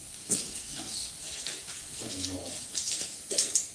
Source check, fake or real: fake